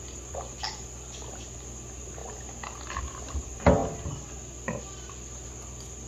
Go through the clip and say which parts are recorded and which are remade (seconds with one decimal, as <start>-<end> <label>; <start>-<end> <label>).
0.0-6.1 recorded